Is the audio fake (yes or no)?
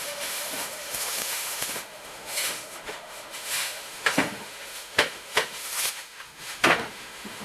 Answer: yes